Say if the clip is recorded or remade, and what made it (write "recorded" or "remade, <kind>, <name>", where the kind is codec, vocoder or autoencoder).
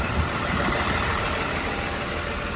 remade, vocoder, BigVGAN v2